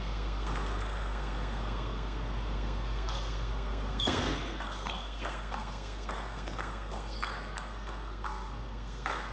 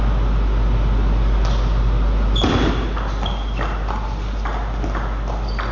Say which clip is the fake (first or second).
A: first